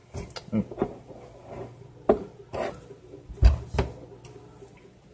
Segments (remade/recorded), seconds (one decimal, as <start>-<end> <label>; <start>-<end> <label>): 0.0-5.1 recorded